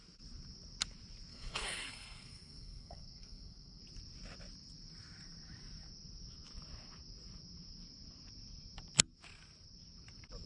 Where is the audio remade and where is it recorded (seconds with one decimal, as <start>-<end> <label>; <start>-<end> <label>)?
0.0-1.3 recorded; 1.3-3.8 remade; 3.8-10.5 recorded